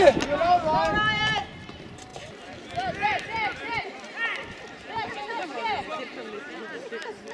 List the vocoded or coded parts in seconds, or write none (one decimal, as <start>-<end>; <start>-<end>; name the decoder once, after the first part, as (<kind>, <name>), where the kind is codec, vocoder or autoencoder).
none